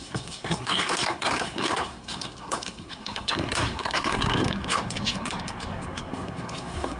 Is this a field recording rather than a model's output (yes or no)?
no